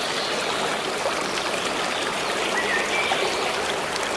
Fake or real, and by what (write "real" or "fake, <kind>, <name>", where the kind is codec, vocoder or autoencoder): real